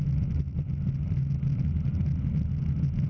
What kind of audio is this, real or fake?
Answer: real